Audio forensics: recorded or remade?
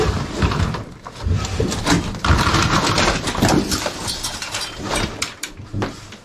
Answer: remade